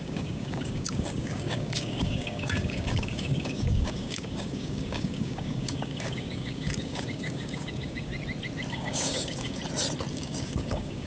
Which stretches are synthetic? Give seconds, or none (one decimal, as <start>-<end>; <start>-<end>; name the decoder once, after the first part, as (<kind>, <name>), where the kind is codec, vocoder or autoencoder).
0.0-8.1 (codec, DAC); 8.7-9.6; 10.1-11.1